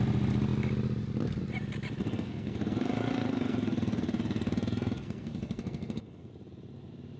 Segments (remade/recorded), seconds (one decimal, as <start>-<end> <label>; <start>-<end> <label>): 0.0-2.0 recorded; 2.0-6.3 remade; 6.3-7.2 recorded